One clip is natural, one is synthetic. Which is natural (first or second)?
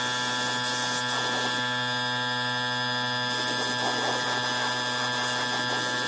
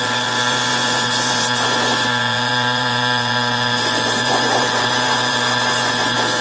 first